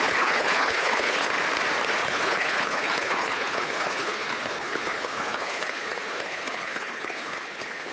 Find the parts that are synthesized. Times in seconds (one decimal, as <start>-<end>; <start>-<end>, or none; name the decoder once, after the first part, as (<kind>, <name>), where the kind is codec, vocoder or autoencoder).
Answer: 0.0-1.3 (codec, HILCodec); 2.0-7.9